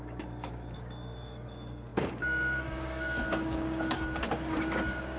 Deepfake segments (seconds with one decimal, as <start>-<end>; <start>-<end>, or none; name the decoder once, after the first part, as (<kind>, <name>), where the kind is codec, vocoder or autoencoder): 0.0-5.2 (codec, DAC)